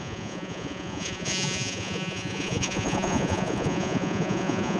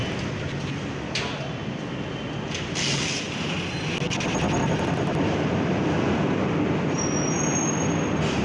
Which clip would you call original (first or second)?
second